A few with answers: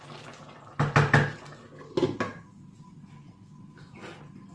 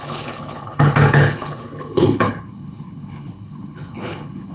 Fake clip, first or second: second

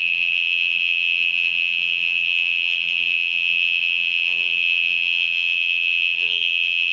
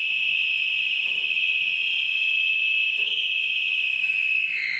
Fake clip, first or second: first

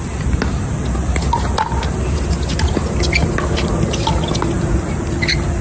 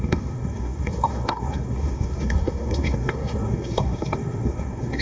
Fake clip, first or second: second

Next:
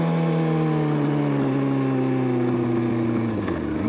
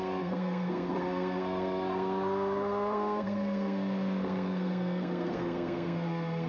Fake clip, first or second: second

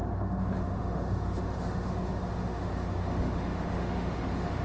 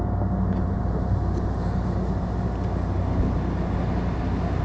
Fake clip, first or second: first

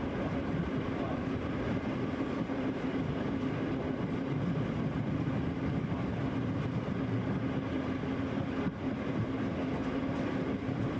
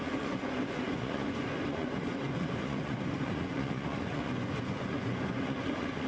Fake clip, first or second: second